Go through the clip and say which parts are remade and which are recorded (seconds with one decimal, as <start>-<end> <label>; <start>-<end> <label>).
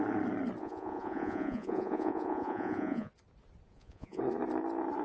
0.0-0.6 recorded; 0.6-3.1 remade; 3.1-3.7 recorded; 3.7-4.2 remade; 4.2-5.0 recorded